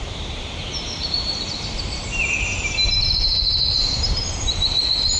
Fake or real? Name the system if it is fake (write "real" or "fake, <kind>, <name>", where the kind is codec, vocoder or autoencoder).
fake, vocoder, BigVGAN v2